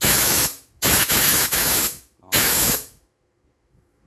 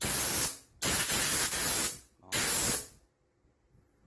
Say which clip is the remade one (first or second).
first